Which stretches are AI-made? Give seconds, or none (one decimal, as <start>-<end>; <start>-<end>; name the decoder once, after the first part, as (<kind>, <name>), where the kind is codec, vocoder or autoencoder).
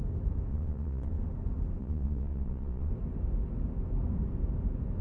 0.5-1.1 (vocoder, Vocos); 1.8-2.9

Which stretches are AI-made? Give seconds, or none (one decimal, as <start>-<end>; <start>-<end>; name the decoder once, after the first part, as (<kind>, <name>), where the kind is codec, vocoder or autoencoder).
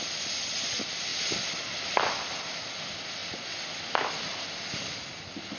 none